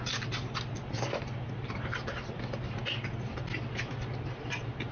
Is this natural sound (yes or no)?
yes